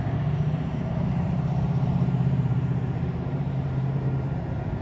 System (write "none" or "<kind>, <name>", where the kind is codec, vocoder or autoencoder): vocoder, BigVGAN v2